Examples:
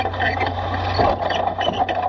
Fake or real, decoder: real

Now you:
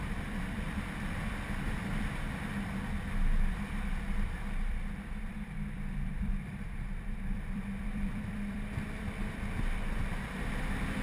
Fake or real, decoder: fake, vocoder, BigVGAN v2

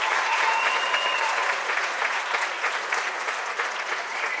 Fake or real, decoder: fake, vocoder, Vocos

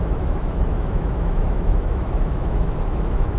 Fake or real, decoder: fake, autoencoder, DAC-VAE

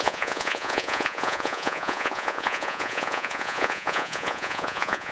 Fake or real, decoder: fake, vocoder, Vocos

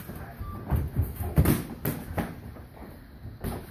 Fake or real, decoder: real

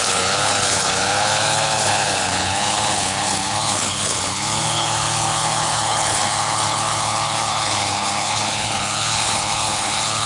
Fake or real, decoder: fake, codec, HILCodec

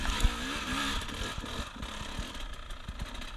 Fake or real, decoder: real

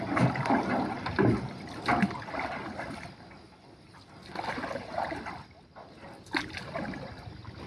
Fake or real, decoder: real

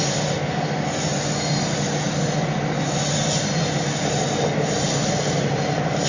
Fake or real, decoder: real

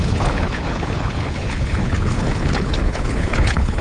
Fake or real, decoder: fake, codec, HILCodec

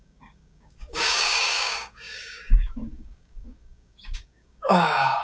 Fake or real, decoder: fake, codec, DAC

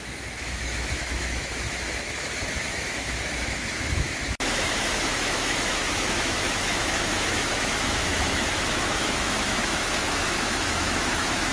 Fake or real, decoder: fake, autoencoder, DAC-VAE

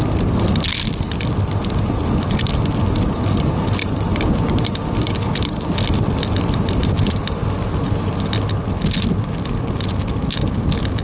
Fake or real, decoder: real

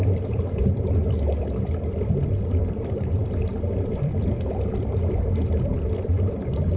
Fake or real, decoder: fake, vocoder, BigVGAN v2